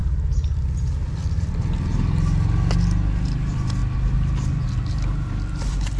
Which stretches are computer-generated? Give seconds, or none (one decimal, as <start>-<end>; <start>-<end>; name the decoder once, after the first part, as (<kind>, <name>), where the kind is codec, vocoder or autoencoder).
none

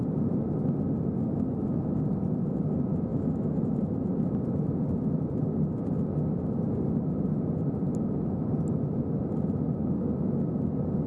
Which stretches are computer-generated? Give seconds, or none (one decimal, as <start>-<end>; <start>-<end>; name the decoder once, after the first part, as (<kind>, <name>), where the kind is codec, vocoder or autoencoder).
3.1-3.8 (autoencoder, DAC-VAE)

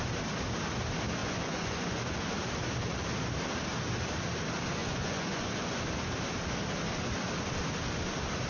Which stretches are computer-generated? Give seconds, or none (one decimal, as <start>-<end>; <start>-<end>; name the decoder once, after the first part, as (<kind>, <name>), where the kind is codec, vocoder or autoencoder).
1.2-2.0 (vocoder, Vocos); 4.8-5.8